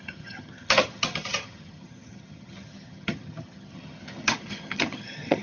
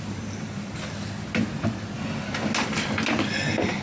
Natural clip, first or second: second